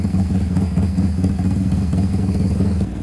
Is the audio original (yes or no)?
no